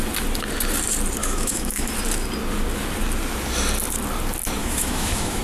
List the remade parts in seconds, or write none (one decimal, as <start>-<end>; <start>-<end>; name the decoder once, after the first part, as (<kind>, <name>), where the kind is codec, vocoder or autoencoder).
1.2-1.9 (autoencoder, DAC-VAE); 4.6-5.4